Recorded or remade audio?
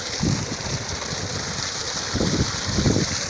recorded